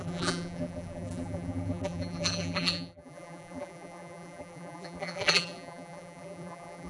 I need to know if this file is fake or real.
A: fake